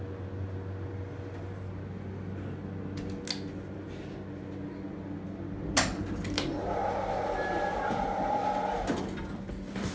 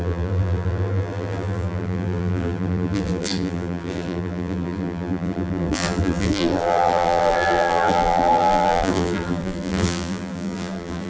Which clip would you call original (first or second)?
first